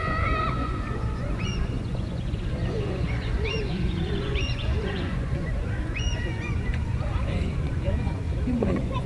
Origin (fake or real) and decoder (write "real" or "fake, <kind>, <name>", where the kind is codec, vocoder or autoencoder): fake, vocoder, Vocos